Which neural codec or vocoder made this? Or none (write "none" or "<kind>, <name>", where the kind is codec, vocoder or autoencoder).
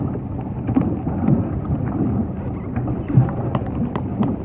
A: none